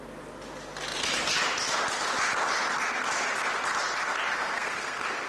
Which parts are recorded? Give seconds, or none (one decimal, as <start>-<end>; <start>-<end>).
0.0-4.3